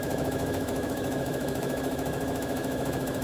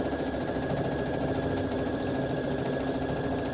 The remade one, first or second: first